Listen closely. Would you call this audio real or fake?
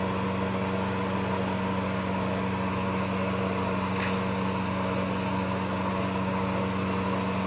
real